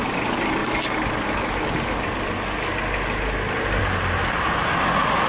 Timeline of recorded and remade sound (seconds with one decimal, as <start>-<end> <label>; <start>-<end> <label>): 0.0-0.6 remade; 0.6-3.8 recorded; 3.8-4.2 remade; 4.2-5.3 recorded